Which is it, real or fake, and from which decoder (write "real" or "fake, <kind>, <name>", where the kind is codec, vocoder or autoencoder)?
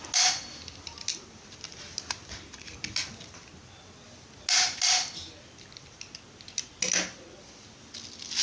real